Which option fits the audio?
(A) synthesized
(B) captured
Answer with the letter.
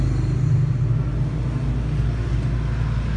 B